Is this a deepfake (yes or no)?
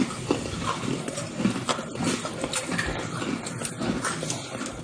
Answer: no